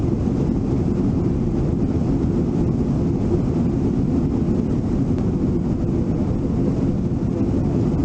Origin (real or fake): real